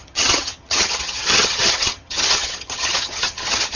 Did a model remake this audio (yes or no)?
yes